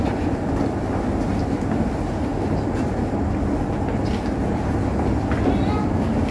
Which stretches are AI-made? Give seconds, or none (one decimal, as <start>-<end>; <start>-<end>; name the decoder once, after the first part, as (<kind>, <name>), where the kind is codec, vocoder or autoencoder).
5.8-6.3 (codec, DAC)